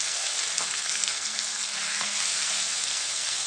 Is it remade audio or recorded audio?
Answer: remade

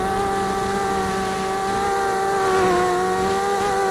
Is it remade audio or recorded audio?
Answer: recorded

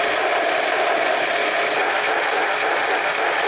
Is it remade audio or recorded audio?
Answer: recorded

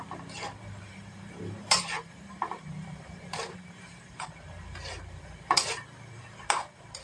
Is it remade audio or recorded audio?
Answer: remade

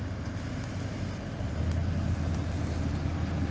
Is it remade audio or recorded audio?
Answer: recorded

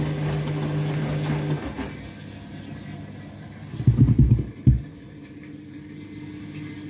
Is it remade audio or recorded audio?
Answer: recorded